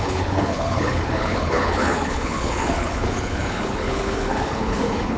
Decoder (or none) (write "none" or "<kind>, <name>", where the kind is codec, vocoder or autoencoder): codec, HILCodec